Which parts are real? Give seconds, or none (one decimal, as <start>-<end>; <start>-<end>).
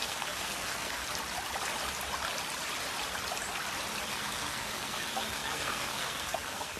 1.0-4.1